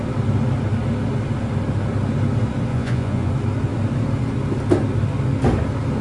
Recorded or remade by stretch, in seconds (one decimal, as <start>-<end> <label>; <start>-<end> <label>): 0.0-2.7 recorded; 2.7-3.3 remade; 3.3-6.0 recorded